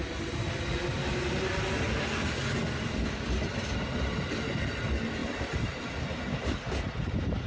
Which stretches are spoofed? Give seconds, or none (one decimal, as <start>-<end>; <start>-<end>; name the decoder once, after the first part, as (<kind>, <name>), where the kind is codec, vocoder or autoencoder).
5.2-6.2 (vocoder, BigVGAN v2)